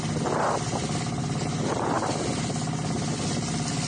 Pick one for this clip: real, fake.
real